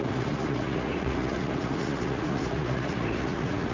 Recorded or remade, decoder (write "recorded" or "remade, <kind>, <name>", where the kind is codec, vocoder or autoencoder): remade, vocoder, Vocos